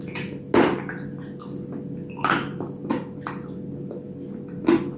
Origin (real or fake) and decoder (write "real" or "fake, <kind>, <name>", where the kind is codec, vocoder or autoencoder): real